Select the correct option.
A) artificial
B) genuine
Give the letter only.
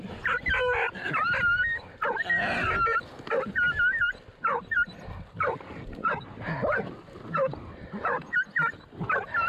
B